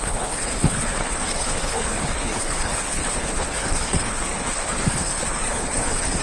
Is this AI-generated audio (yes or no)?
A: yes